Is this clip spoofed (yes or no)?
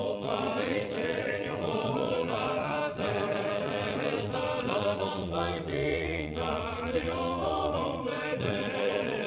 yes